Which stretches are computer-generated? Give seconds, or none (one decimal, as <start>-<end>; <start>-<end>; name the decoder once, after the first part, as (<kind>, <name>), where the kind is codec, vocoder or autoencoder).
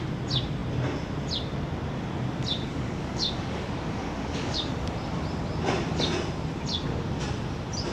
2.7-4.7 (codec, DAC)